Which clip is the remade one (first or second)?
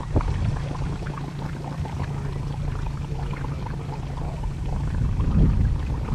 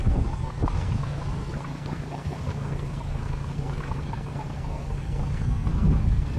second